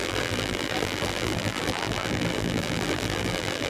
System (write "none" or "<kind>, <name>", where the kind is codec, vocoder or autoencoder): vocoder, BigVGAN v2